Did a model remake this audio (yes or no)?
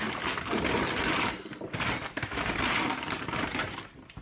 no